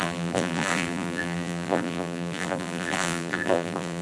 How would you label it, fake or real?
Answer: fake